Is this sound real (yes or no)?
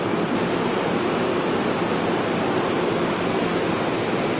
yes